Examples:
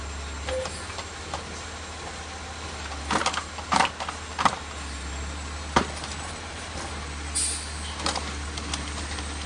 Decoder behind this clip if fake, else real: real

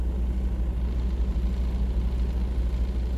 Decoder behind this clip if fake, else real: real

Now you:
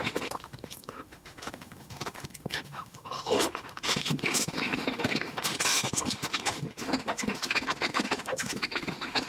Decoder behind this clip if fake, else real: fake, autoencoder, DAC-VAE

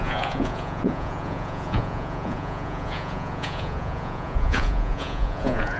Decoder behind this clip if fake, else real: fake, vocoder, Vocos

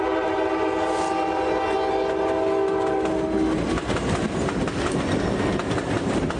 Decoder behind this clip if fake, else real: real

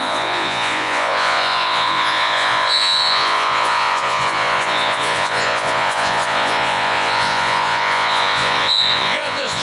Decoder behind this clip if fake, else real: fake, vocoder, Vocos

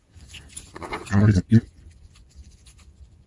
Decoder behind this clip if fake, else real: fake, vocoder, Vocos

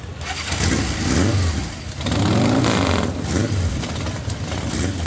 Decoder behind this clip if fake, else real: real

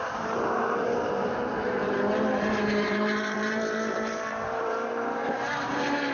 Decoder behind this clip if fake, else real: fake, vocoder, BigVGAN v2